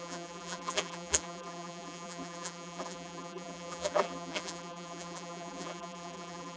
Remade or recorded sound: remade